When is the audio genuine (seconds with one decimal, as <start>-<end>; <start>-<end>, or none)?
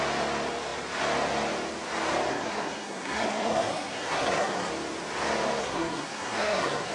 0.0-2.3; 4.7-5.6